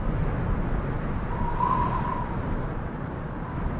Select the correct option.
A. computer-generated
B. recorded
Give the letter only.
B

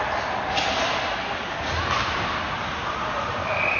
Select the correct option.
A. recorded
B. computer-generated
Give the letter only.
A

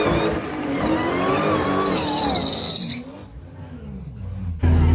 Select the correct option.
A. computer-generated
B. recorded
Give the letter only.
B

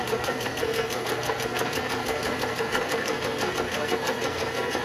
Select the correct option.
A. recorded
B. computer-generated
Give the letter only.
B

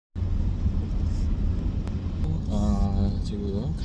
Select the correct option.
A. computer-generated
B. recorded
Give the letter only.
B